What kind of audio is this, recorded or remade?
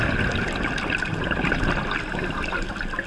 recorded